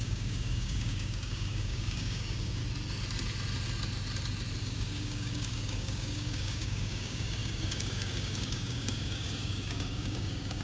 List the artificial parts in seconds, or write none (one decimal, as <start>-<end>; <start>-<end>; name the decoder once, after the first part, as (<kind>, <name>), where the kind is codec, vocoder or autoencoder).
0.0-2.6 (codec, DAC); 4.6-10.6